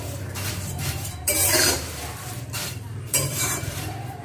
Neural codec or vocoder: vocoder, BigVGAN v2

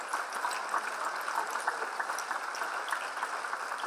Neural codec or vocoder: none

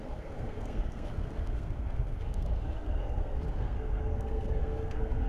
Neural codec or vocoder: codec, SNAC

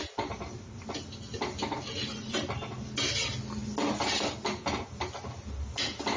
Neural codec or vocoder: none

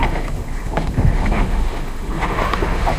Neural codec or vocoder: autoencoder, DAC-VAE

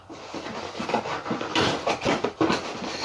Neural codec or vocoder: none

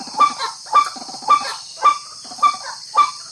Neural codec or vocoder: none